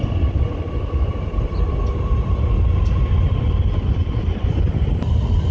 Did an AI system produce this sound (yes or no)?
no